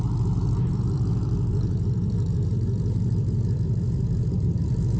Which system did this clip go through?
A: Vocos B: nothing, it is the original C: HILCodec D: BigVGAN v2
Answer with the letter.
D